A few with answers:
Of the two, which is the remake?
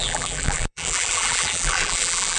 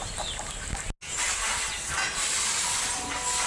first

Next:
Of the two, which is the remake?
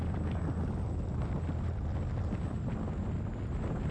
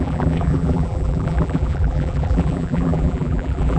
second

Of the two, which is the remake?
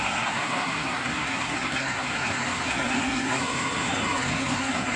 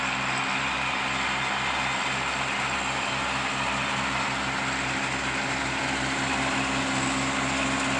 first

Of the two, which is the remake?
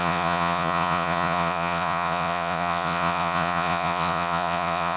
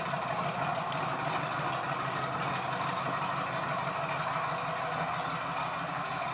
first